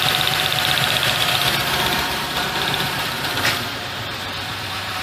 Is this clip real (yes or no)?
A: no